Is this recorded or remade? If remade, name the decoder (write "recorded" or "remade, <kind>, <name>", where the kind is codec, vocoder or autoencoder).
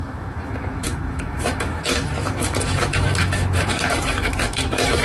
remade, autoencoder, DAC-VAE